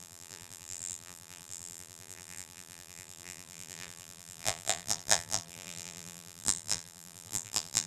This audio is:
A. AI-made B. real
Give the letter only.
A